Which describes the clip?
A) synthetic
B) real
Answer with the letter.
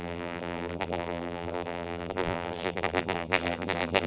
A